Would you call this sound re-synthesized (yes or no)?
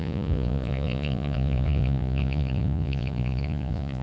yes